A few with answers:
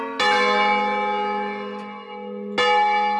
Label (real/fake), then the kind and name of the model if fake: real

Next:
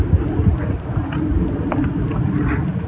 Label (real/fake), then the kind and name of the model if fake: real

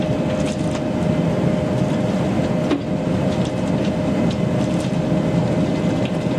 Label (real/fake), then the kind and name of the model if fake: real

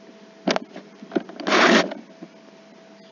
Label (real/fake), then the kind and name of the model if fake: real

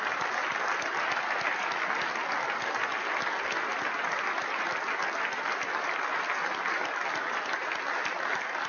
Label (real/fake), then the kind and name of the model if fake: real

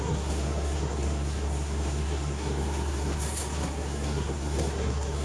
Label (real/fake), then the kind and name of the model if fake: fake, codec, SNAC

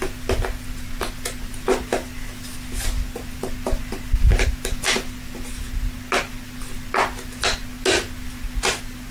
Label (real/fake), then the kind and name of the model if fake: real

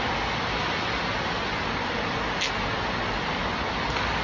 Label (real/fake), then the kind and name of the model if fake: real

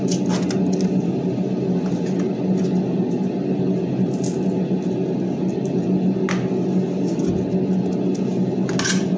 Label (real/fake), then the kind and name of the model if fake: real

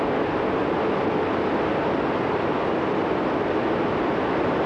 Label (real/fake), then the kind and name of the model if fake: real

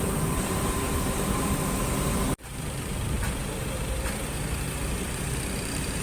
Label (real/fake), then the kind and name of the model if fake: fake, vocoder, BigVGAN v2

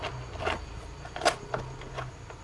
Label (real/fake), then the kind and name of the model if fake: real